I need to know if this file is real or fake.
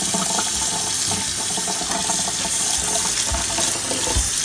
real